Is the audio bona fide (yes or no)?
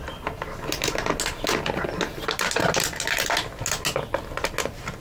yes